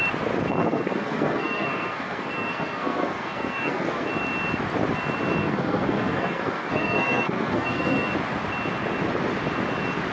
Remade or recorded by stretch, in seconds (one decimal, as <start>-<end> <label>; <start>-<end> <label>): 0.0-0.6 recorded; 0.6-4.1 remade; 4.1-5.4 recorded; 5.4-8.1 remade; 8.1-10.1 recorded

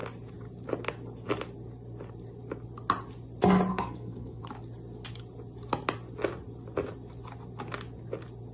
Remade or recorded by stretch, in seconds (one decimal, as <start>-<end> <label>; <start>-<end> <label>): 0.0-3.7 recorded; 3.7-4.4 remade; 4.4-8.5 recorded

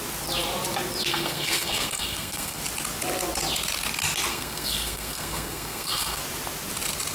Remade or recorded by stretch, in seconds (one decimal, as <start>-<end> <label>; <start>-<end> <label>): 0.0-1.1 recorded; 1.1-2.6 remade; 2.6-4.3 recorded; 4.3-6.2 remade; 6.2-7.1 recorded

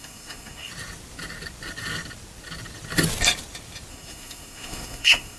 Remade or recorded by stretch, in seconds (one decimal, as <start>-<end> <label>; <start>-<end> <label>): 0.0-0.7 remade; 0.7-3.9 recorded; 3.9-5.4 remade

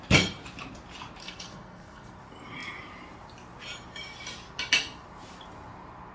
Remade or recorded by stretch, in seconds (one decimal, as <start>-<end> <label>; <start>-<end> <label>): 0.0-1.2 recorded; 1.2-2.1 remade; 2.1-6.1 recorded